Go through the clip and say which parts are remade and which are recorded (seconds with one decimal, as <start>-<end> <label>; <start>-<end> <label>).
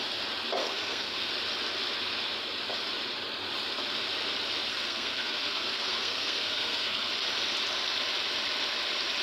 0.0-0.6 recorded; 0.6-1.3 remade; 1.3-4.7 recorded; 4.7-7.1 remade; 7.1-9.2 recorded